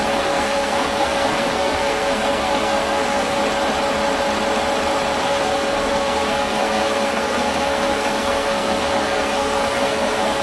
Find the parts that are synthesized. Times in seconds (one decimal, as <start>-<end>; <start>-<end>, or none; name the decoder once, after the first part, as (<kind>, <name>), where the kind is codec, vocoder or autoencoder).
0.0-3.4 (codec, SNAC); 5.2-10.4